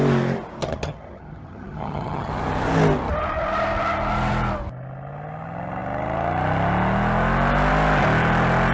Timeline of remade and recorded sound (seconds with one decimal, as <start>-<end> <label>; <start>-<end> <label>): 0.0-0.6 recorded; 0.6-2.3 remade; 2.3-8.7 recorded

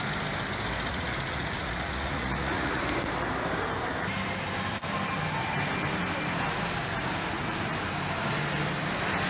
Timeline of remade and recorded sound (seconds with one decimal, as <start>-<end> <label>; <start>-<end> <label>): 0.0-0.9 recorded; 0.9-2.8 remade; 2.8-9.3 recorded